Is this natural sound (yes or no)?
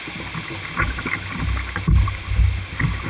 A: yes